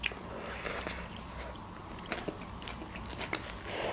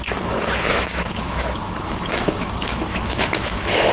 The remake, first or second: second